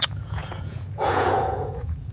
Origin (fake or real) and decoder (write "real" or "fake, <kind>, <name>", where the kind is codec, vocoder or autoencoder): fake, vocoder, Vocos